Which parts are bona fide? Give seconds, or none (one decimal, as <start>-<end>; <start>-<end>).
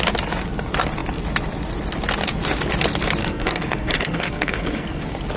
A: 0.0-3.2; 5.0-5.4